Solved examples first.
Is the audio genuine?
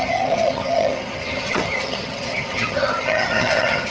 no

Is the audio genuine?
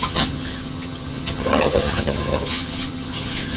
no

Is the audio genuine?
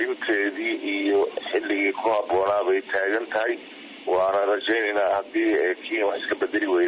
yes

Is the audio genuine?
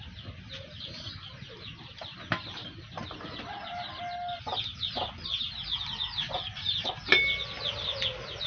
yes